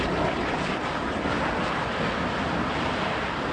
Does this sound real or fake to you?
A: real